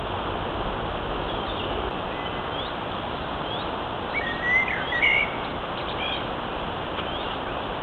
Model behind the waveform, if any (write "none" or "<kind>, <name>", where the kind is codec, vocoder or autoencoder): none